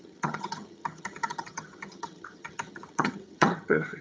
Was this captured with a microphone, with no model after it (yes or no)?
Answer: no